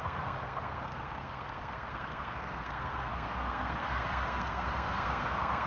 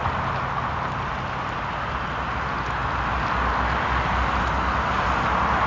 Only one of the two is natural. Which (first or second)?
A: second